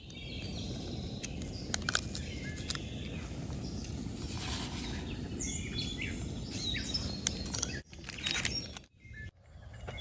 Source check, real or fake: real